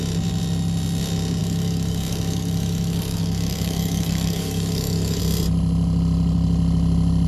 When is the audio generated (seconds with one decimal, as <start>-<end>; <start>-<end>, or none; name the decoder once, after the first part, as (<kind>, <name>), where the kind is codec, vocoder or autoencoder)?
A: 1.4-5.2 (codec, DAC)